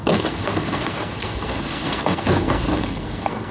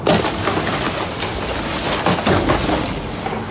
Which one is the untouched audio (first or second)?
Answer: second